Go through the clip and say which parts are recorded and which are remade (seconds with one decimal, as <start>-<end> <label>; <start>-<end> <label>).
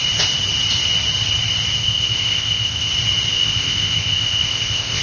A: 0.0-1.8 recorded; 1.8-2.9 remade; 2.9-3.3 recorded; 3.3-5.0 remade